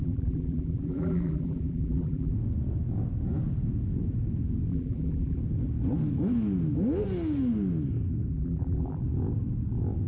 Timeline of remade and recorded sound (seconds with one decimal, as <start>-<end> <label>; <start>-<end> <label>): 0.0-2.3 remade; 2.3-4.7 recorded; 4.7-5.4 remade; 5.4-8.3 recorded; 8.3-9.0 remade; 9.0-10.1 recorded